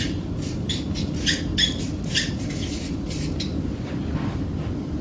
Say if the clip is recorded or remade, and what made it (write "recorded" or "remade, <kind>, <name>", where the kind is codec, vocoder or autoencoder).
recorded